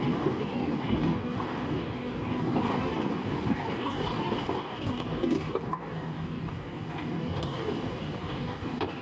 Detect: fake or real fake